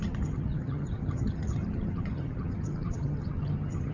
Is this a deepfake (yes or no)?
yes